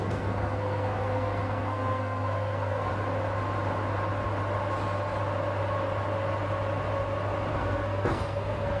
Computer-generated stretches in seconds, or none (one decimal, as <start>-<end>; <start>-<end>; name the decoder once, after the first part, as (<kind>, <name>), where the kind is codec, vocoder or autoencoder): 0.0-2.9 (codec, SNAC); 7.5-8.8